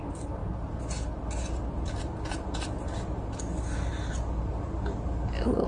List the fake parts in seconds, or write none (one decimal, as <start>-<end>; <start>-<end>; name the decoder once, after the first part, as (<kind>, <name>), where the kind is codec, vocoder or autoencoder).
none